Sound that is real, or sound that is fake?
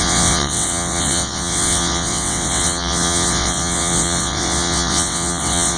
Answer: fake